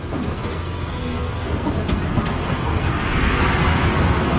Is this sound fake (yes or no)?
yes